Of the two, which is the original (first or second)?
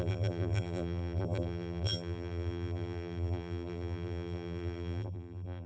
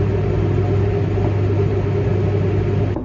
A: second